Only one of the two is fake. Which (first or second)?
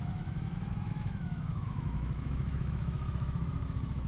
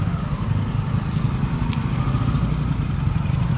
first